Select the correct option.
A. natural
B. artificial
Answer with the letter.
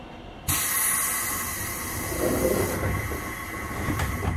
A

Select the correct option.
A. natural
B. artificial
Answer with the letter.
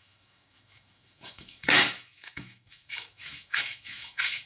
B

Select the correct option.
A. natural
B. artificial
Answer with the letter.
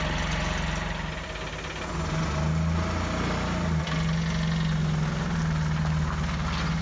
A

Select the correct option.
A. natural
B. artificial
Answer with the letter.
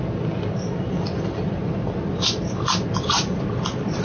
A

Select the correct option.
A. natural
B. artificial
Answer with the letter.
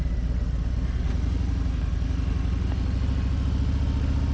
A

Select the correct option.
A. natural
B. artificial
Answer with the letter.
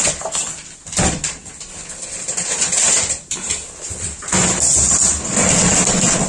A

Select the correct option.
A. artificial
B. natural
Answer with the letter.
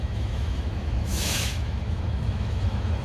A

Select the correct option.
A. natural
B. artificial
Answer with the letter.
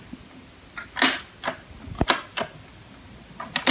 A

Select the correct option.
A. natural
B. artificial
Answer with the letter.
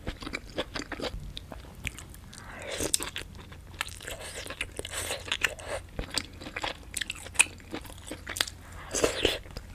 A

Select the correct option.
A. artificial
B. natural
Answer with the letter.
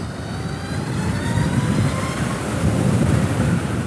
B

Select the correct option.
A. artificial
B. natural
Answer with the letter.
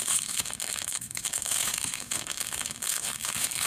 A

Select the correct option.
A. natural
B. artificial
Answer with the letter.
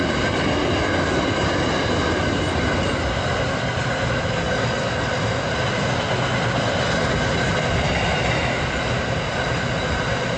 A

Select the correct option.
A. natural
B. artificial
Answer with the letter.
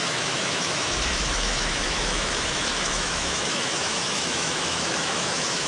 B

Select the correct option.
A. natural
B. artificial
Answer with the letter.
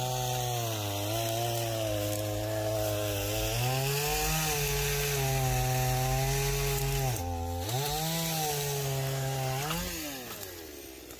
A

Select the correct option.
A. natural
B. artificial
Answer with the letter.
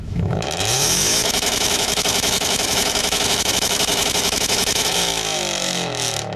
B